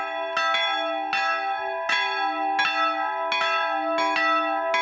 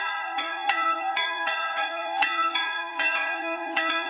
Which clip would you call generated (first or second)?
second